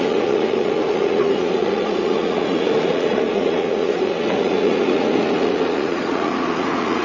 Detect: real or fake fake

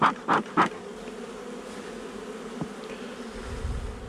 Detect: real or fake real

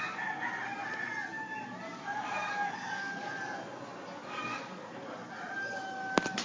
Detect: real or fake real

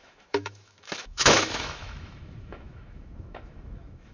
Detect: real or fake fake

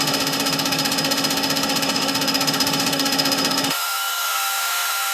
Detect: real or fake fake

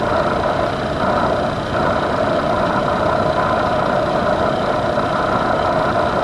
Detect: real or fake real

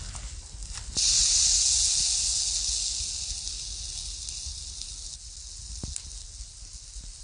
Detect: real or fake real